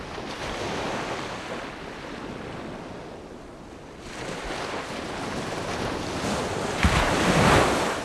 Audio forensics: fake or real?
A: real